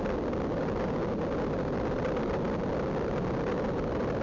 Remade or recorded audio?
recorded